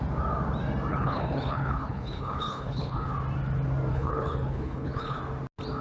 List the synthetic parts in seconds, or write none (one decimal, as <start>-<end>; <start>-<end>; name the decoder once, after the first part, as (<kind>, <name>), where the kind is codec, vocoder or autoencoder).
0.9-3.1 (codec, HILCodec); 3.9-5.2